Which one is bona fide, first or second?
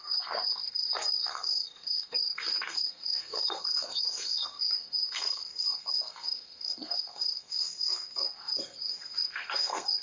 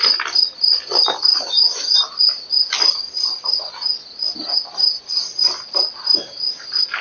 second